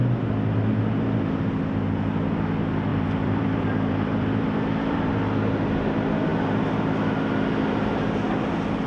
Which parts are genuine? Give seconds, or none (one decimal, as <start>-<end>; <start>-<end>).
0.0-2.9; 5.1-8.9